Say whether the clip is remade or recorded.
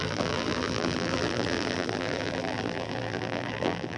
remade